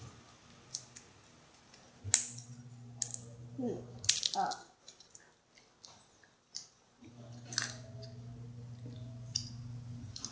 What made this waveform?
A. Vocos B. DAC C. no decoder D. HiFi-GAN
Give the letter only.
C